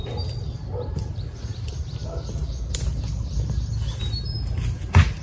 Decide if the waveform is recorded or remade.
recorded